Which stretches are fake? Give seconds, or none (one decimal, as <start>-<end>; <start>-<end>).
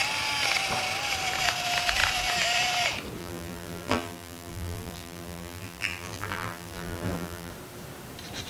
3.2-7.5